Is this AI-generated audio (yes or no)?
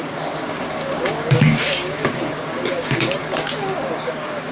yes